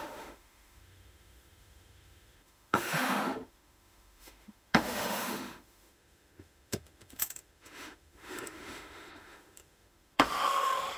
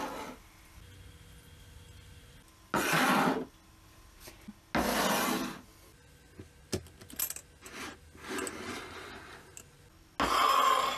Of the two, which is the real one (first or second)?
second